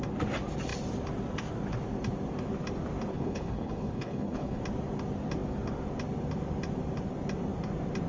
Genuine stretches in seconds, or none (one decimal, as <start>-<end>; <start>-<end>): 0.0-3.1; 4.6-8.1